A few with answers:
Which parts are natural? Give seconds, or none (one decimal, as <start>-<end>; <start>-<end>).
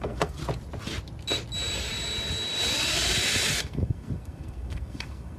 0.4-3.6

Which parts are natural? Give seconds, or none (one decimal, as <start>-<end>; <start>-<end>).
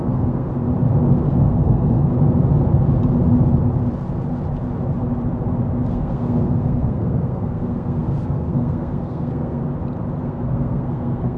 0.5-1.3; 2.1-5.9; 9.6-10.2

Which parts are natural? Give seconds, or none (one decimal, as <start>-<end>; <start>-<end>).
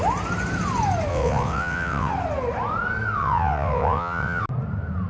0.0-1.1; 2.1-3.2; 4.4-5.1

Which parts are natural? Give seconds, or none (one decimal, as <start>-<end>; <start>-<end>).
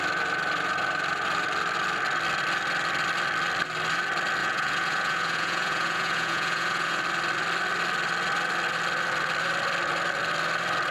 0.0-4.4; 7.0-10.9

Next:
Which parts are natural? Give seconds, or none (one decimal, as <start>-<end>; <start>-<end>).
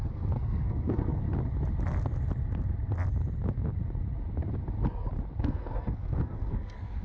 1.2-5.4